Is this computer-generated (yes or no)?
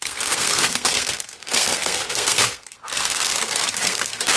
yes